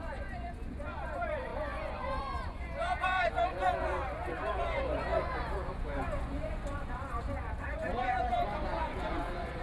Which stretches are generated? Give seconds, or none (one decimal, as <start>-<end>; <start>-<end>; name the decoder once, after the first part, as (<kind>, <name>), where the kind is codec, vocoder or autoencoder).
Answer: 0.0-9.6 (vocoder, Vocos)